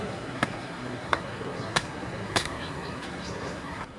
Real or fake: fake